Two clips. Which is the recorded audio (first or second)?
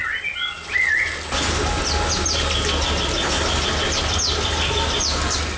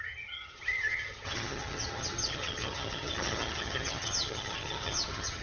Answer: first